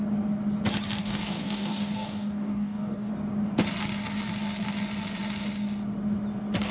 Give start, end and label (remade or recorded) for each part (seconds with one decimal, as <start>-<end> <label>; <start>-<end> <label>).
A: 0.0-1.0 recorded; 1.0-3.1 remade; 3.1-6.7 recorded